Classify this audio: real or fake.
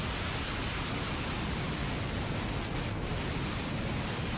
real